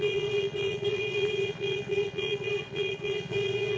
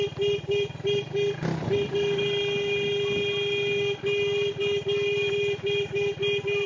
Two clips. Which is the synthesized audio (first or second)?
first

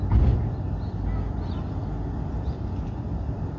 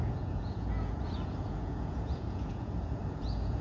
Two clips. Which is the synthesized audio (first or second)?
second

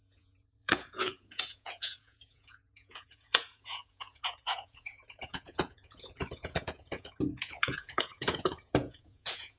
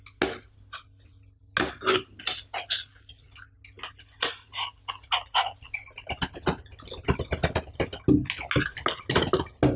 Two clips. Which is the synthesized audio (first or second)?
first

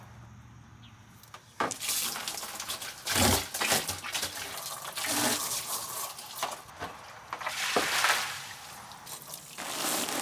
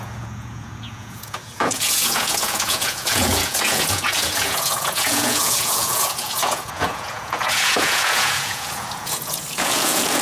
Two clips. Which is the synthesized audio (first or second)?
second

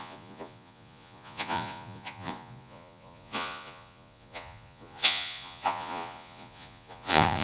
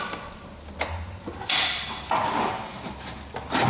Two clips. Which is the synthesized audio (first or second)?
first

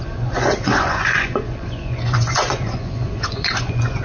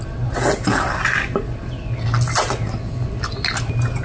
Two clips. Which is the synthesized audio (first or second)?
first